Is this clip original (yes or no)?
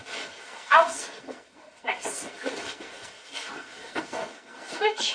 no